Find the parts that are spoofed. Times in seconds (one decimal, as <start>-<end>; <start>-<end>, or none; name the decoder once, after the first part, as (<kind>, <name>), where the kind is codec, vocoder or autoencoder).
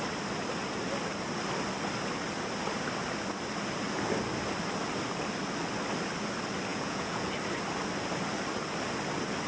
6.7-7.3 (vocoder, Vocos)